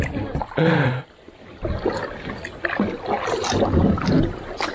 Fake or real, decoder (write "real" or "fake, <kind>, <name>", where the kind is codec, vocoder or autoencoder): real